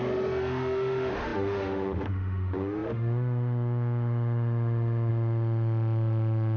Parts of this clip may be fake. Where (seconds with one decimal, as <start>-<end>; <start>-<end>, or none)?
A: 0.0-6.6